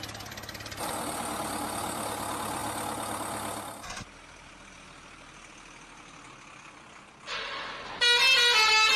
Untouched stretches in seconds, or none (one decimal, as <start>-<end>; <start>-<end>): 0.0-9.0